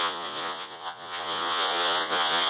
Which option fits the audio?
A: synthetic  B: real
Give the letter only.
A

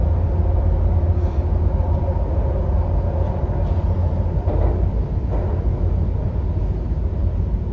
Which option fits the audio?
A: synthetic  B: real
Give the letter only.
B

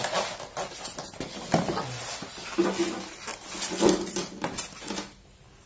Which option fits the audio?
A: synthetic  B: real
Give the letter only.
B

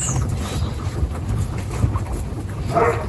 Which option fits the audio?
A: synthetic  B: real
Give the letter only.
B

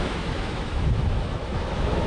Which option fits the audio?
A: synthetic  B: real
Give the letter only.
A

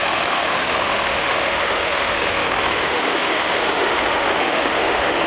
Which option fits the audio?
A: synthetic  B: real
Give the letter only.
A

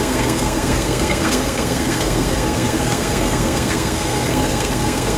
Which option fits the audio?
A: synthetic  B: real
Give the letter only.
A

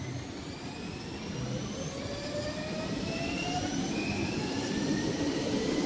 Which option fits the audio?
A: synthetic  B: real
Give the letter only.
B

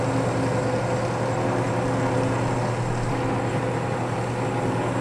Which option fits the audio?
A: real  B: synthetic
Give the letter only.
A